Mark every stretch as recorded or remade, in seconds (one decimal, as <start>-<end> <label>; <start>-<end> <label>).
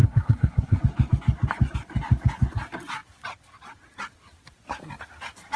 0.0-0.8 remade; 0.8-5.6 recorded